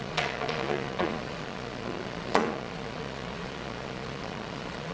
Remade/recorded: remade